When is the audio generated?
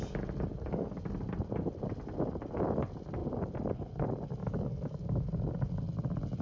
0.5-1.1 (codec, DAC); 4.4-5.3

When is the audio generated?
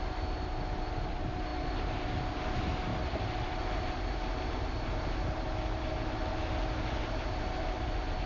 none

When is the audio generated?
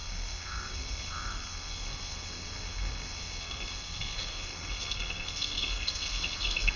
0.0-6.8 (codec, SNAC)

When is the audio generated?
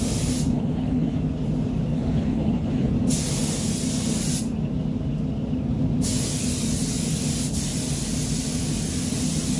0.5-1.2 (codec, HILCodec); 1.9-2.9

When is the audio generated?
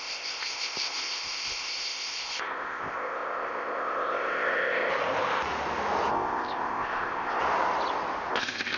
0.0-4.9 (codec, ZipCodec); 6.1-7.4; 8.3-8.8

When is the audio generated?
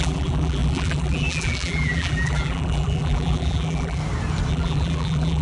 0.0-4.0 (vocoder, BigVGAN v2); 4.5-5.4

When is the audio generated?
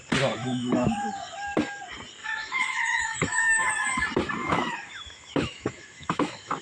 0.4-1.1 (autoencoder, DAC-VAE); 2.2-3.7; 4.4-6.6